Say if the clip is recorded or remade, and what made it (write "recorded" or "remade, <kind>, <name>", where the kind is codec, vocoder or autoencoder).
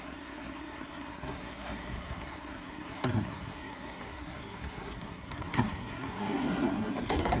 remade, codec, SNAC